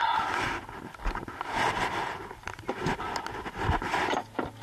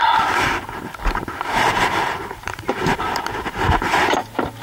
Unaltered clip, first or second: first